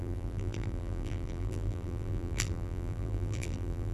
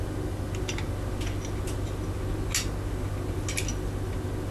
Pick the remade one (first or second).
first